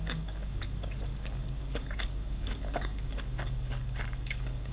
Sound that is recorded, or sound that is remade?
remade